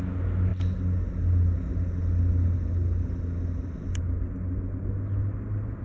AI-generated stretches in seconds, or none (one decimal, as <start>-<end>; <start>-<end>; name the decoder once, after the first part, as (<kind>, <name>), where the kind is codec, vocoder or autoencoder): none